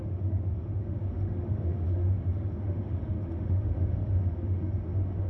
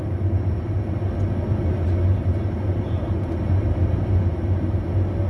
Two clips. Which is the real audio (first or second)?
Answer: second